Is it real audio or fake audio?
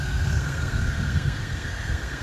fake